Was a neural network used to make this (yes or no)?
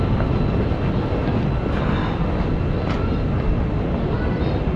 no